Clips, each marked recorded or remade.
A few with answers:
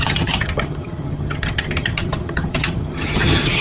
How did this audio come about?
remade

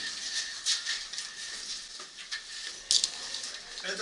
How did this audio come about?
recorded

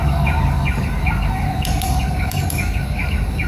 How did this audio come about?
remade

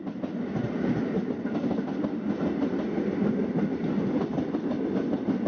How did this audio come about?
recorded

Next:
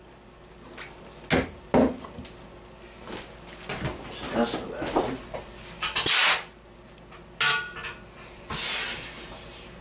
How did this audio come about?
recorded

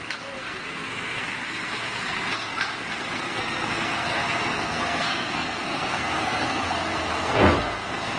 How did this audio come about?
remade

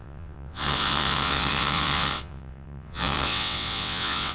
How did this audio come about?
remade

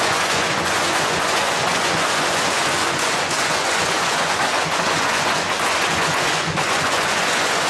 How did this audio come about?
remade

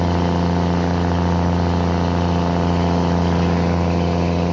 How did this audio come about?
recorded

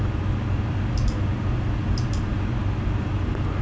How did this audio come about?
recorded